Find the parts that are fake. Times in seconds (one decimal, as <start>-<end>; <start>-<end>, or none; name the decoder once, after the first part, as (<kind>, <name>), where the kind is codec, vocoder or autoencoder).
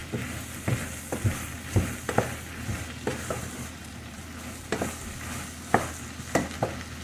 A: 3.1-4.2 (vocoder, BigVGAN v2)